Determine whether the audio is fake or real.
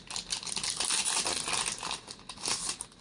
real